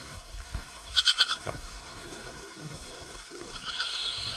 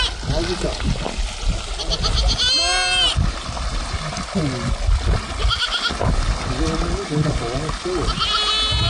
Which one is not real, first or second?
first